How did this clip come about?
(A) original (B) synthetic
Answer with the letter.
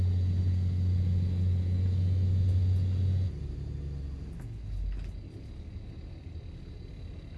A